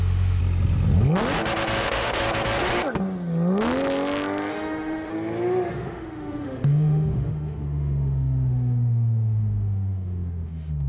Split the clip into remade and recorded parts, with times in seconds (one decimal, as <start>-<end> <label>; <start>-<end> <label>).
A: 0.0-0.4 remade; 0.4-1.8 recorded; 1.8-2.2 remade; 2.2-4.5 recorded; 4.5-5.1 remade; 5.1-5.7 recorded; 5.7-10.9 remade